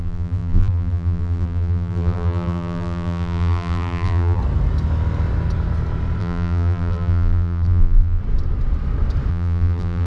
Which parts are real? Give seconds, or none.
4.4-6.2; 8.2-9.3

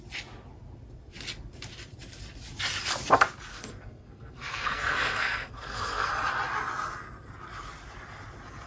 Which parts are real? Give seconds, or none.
0.0-3.5; 6.1-8.7

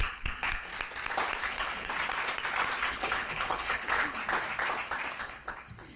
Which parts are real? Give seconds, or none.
0.7-1.4; 1.9-2.8; 4.2-5.2